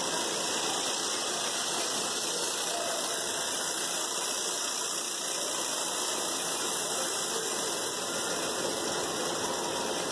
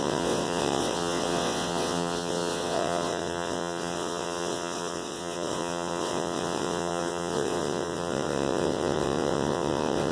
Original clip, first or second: first